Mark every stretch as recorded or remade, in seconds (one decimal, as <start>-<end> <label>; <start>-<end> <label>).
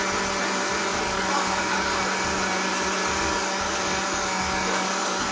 0.0-0.9 recorded; 0.9-2.0 remade; 2.0-3.0 recorded; 3.0-5.3 remade